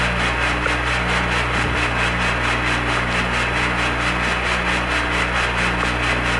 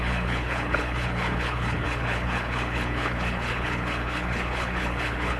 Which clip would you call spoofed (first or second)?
second